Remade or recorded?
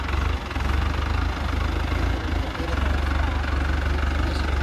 recorded